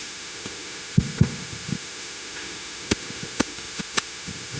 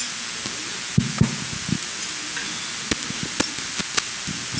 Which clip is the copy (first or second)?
first